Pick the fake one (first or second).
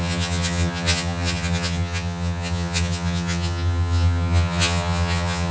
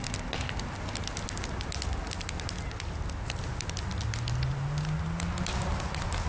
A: first